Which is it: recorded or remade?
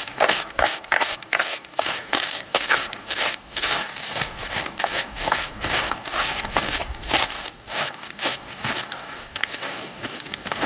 remade